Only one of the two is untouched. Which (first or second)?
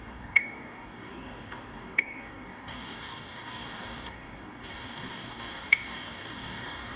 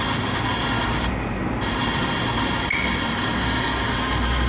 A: second